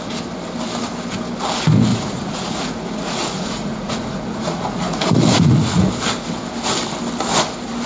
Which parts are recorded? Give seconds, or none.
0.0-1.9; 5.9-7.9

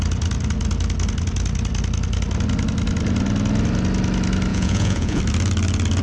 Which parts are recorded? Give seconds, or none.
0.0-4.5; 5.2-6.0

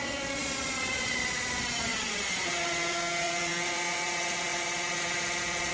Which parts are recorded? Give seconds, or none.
none

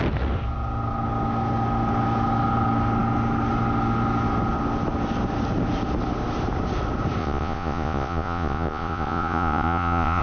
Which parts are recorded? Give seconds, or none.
0.0-7.2

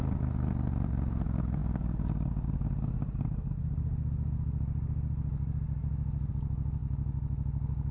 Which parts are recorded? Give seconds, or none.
0.0-7.9

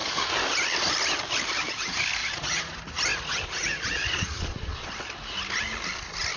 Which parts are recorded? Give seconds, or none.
0.0-2.2; 2.7-3.1; 4.9-6.4

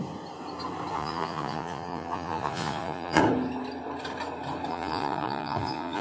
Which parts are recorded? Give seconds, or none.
0.0-0.9; 3.2-4.7